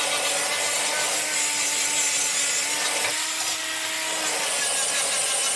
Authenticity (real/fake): real